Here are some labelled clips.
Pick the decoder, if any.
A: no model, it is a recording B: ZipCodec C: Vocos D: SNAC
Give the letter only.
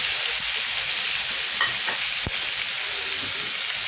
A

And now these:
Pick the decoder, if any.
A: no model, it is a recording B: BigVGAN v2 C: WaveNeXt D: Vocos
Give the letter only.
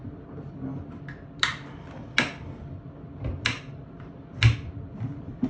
A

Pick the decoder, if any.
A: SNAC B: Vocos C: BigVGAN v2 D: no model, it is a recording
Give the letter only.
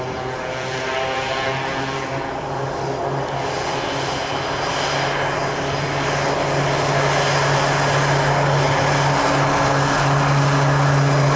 D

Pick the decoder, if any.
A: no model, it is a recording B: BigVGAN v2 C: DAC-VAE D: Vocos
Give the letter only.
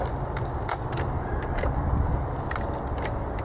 A